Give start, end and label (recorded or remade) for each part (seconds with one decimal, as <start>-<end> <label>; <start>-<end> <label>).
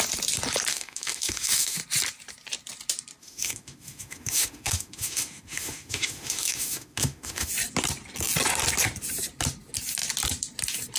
0.0-0.7 recorded; 0.7-1.8 remade; 1.8-3.2 recorded; 3.2-7.5 remade; 7.5-11.0 recorded